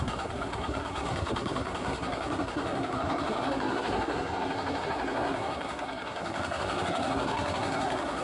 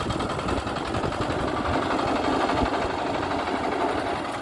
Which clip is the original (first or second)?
second